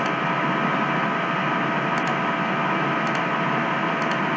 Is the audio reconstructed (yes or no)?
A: no